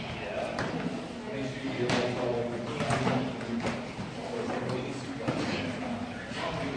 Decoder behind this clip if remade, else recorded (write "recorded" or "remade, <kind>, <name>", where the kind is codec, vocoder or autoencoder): recorded